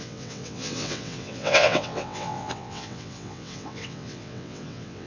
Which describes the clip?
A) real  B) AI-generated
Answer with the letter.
B